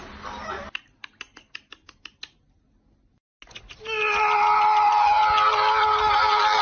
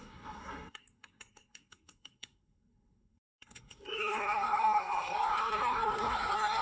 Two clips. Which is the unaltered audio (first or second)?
first